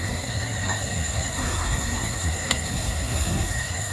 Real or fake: fake